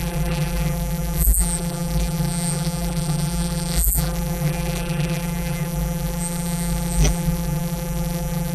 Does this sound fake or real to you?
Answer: fake